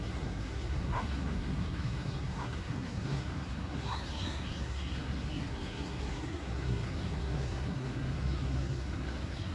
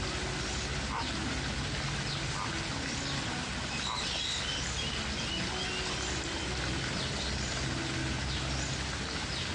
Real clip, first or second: second